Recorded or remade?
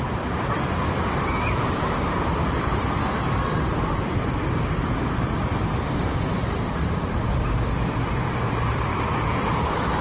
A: remade